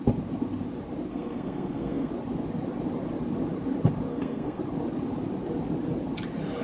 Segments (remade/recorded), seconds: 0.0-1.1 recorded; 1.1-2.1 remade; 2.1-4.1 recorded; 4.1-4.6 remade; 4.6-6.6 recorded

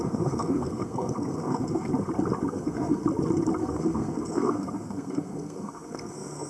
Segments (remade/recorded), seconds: 0.0-1.9 remade; 1.9-2.5 recorded; 2.5-3.0 remade; 3.0-3.6 recorded; 3.6-6.5 remade

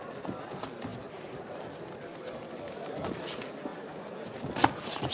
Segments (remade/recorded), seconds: 0.0-5.1 recorded

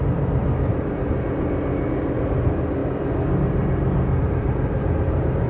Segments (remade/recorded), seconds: 0.0-0.4 remade; 0.4-2.1 recorded; 2.1-2.8 remade; 2.8-4.2 recorded; 4.2-5.5 remade

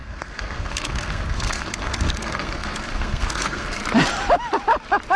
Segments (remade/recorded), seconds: 0.0-3.8 remade; 3.8-5.2 recorded

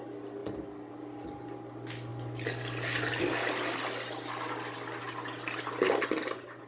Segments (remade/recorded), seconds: 0.0-6.7 recorded

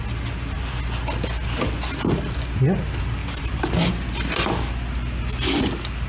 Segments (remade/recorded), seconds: 0.0-3.2 recorded; 3.2-3.9 remade; 3.9-6.1 recorded